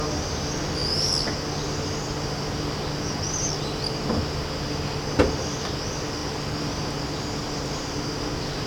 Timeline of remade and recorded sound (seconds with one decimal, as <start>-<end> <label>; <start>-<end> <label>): 0.0-8.7 recorded